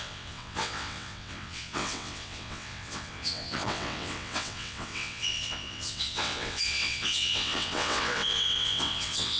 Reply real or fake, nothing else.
fake